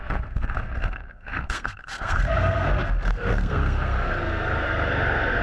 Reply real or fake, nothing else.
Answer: fake